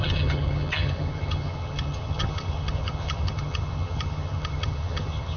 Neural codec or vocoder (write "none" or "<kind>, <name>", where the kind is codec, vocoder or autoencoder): vocoder, HiFi-GAN